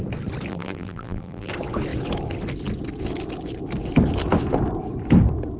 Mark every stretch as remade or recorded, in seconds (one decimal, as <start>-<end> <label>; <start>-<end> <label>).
0.0-0.5 recorded; 0.5-1.5 remade; 1.5-5.6 recorded